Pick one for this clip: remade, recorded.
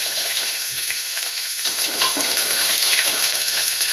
remade